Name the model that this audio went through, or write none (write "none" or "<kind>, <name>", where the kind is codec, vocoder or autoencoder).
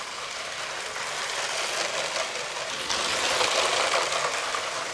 none